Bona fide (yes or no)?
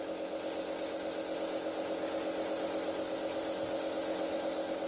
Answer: yes